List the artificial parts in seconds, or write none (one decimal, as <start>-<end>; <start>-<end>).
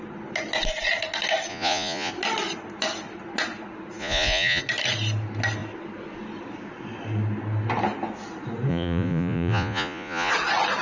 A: 1.5-2.1; 4.0-4.6; 8.7-10.3